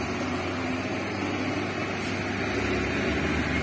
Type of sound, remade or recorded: recorded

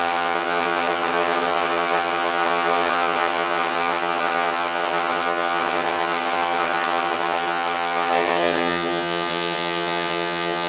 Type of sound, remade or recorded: remade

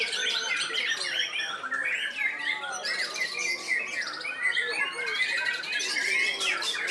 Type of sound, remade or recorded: recorded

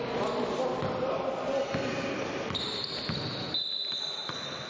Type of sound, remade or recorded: recorded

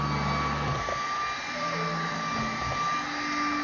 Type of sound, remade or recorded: recorded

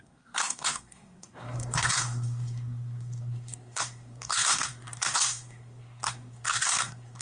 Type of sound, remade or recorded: remade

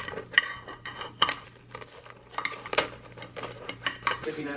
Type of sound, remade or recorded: recorded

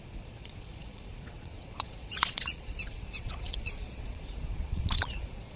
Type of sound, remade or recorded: remade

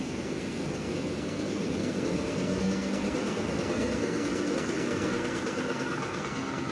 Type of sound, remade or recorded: remade